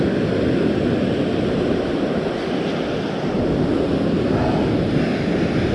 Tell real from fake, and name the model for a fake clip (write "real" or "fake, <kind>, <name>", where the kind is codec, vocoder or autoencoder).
real